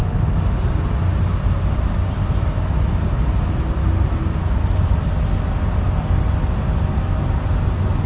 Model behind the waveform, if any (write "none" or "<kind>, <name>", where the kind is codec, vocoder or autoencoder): none